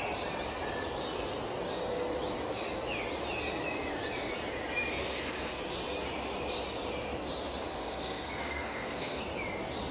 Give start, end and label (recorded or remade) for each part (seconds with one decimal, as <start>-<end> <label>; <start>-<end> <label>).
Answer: 0.0-4.9 recorded; 4.9-5.6 remade; 5.6-7.7 recorded; 7.7-9.2 remade; 9.2-9.9 recorded